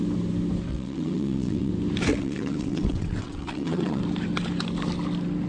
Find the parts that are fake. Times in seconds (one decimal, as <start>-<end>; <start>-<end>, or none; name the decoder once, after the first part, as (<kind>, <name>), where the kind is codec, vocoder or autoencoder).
0.7-1.7 (vocoder, WaveNeXt); 2.1-4.0